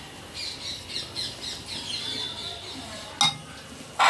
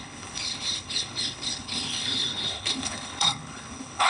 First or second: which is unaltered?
first